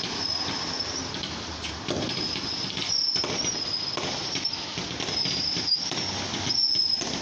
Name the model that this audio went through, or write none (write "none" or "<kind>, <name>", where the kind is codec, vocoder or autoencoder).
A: none